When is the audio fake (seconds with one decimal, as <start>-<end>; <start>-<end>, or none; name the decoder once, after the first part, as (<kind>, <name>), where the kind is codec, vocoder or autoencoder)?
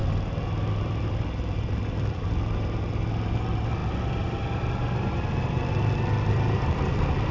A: none